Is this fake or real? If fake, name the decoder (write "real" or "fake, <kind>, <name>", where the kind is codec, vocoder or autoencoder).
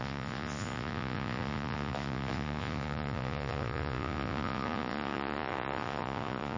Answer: fake, vocoder, Vocos